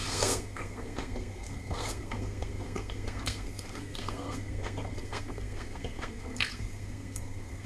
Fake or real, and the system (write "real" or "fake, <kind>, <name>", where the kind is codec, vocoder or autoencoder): fake, codec, SNAC